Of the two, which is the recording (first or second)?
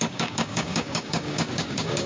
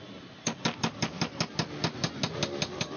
second